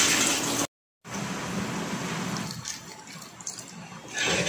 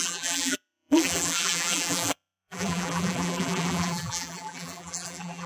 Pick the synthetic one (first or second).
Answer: second